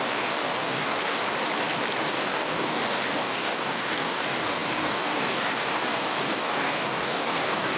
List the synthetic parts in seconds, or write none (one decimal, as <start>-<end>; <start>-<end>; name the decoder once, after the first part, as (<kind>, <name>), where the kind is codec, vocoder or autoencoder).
0.0-1.2 (codec, DAC); 2.0-7.8